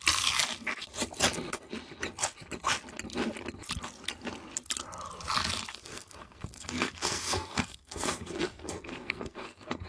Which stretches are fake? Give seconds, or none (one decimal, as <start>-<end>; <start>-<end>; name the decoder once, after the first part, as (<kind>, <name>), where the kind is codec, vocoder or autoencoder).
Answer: 5.7-9.9 (codec, SNAC)